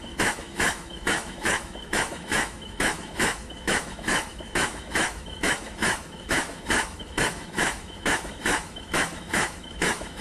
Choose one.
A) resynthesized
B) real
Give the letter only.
A